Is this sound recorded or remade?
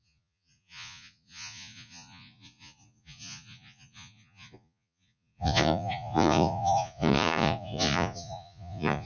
remade